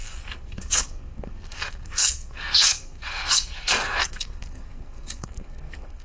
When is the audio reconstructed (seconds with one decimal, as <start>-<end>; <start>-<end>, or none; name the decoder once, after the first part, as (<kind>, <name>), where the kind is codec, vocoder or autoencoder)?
0.0-6.0 (codec, SNAC)